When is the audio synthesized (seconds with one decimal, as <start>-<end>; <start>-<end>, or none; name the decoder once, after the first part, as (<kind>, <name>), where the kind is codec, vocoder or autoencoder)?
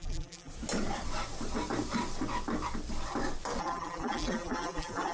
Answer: 0.0-0.5 (vocoder, BigVGAN v2); 3.6-5.1